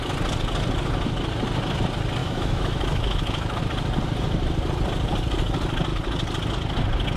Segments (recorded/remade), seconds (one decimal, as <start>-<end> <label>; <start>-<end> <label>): 0.0-2.2 recorded; 2.2-3.6 remade; 3.6-7.2 recorded